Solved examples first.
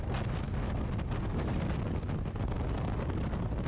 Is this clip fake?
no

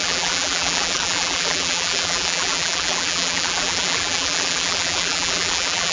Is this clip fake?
yes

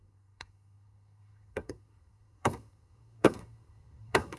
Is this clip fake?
yes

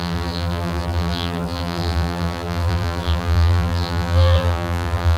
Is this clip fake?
yes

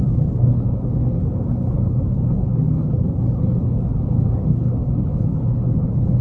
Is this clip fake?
yes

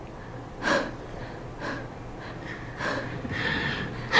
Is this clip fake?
no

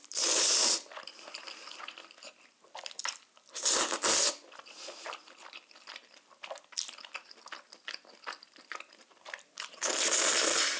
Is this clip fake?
yes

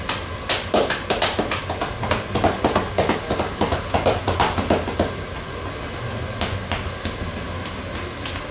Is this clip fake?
no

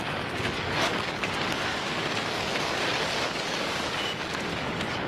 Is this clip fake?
yes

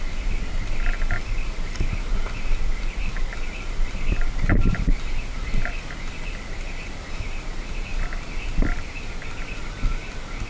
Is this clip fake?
no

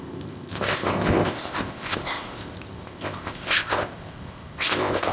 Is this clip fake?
yes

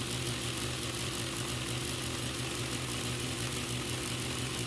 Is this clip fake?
no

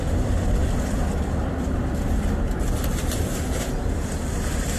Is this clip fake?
no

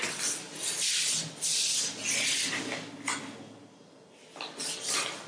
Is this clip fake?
no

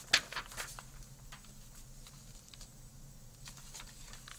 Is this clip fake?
no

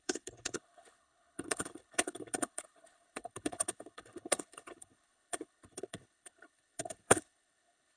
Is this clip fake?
yes